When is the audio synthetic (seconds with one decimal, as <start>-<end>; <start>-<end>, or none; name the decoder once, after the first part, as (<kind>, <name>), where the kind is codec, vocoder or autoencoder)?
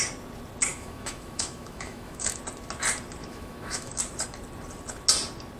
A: 0.7-2.4 (autoencoder, DAC-VAE); 3.2-4.0